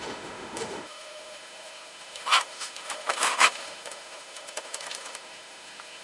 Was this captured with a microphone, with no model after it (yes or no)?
no